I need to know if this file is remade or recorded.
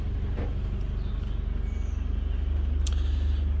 recorded